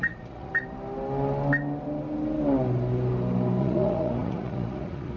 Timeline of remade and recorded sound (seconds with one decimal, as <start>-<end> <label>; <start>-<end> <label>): 0.0-0.5 remade; 0.5-3.6 recorded; 3.6-5.2 remade

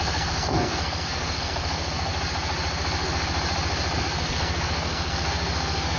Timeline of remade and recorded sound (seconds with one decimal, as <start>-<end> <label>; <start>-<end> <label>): 0.0-2.1 remade; 2.1-4.0 recorded; 4.0-6.0 remade